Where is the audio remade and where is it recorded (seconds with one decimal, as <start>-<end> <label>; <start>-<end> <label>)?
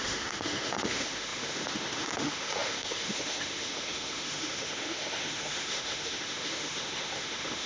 0.0-7.7 remade